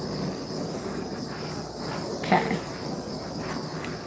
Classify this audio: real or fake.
real